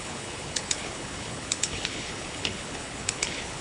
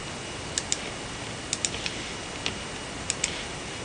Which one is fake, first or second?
first